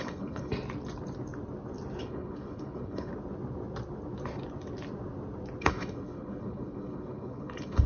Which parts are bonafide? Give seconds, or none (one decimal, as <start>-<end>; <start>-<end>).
0.5-2.0; 3.1-5.6

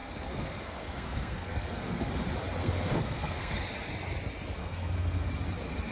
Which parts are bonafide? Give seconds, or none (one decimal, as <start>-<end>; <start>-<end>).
2.1-2.6; 3.6-4.6; 5.3-5.9

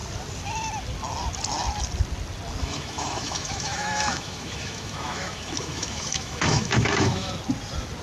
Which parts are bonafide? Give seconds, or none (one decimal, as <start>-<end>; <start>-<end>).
0.0-2.6; 7.3-8.0